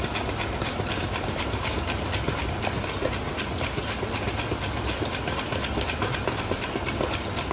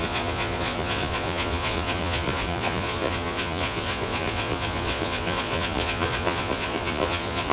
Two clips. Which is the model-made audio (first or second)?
second